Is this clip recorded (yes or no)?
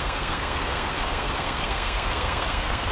no